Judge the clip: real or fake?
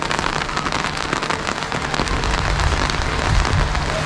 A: real